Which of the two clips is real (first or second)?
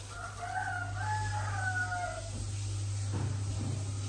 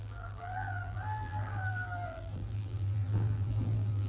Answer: first